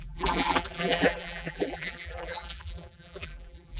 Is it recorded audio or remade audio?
remade